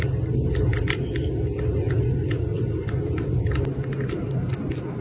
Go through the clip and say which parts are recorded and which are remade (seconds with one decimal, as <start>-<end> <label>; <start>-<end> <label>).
0.0-2.5 recorded; 2.5-3.6 remade; 3.6-5.0 recorded